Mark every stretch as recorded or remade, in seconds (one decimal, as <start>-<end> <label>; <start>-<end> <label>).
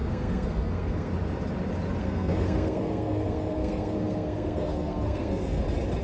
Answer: 0.0-1.1 remade; 1.1-2.0 recorded; 2.0-5.6 remade; 5.6-6.0 recorded